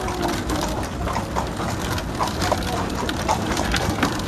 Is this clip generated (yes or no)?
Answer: no